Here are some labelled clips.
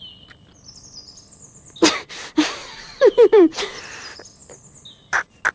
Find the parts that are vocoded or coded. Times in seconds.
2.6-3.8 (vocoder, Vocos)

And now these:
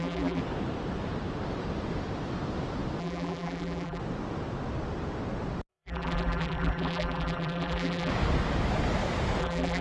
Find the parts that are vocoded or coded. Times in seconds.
0.0-0.4 (vocoder, BigVGAN v2); 3.0-4.0; 5.7-8.1; 9.4-9.8

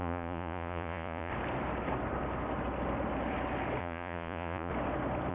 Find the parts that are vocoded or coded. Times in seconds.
0.0-1.3 (vocoder, Vocos); 3.8-4.7